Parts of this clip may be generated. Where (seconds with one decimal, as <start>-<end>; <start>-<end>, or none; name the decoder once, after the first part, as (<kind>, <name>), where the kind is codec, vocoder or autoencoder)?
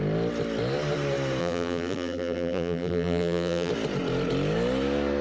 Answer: 1.4-3.7 (vocoder, BigVGAN v2)